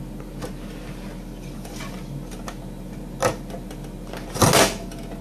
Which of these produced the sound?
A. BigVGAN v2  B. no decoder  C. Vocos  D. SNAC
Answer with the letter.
B